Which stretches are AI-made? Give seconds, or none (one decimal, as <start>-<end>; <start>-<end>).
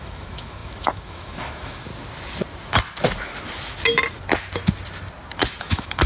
0.0-1.9; 5.6-6.1